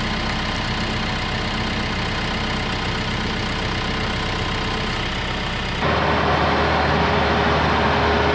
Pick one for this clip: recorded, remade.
recorded